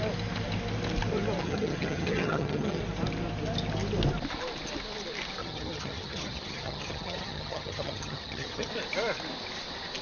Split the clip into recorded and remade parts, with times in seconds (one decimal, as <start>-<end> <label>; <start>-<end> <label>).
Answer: 0.0-1.4 recorded; 1.4-2.8 remade; 2.8-5.4 recorded; 5.4-8.7 remade; 8.7-10.0 recorded